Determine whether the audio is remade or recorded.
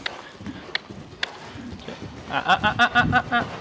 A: recorded